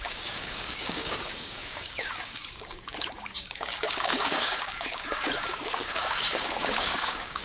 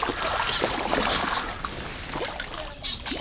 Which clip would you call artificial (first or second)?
first